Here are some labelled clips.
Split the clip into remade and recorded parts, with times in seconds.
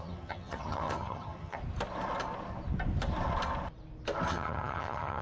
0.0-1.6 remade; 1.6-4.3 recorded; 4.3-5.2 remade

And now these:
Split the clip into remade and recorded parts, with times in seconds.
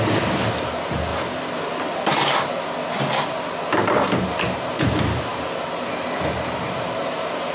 0.0-7.5 recorded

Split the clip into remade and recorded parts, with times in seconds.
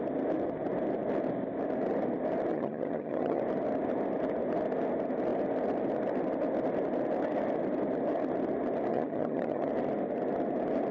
0.0-2.5 recorded; 2.5-3.4 remade; 3.4-8.9 recorded; 8.9-9.7 remade; 9.7-10.9 recorded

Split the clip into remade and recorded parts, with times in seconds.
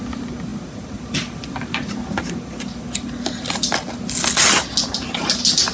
0.0-5.7 recorded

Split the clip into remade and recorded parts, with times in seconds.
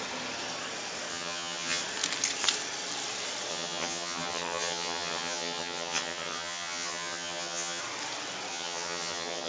0.0-1.1 recorded; 1.1-1.8 remade; 1.8-3.5 recorded; 3.5-7.8 remade; 7.8-8.5 recorded; 8.5-9.5 remade